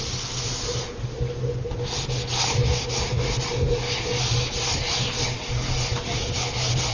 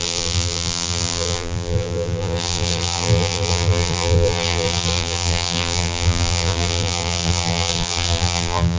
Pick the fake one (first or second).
second